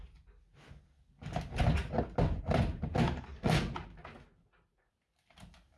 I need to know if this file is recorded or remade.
recorded